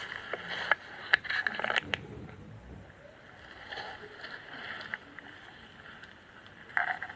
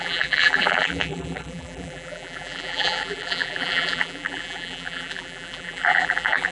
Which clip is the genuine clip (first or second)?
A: first